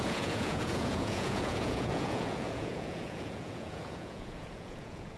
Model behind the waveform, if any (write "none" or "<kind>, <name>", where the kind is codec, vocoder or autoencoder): vocoder, Vocos